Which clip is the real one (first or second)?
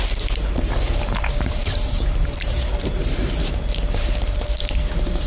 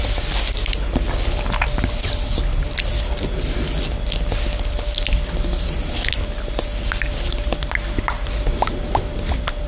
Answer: second